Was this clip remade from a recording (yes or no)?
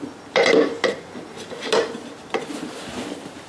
no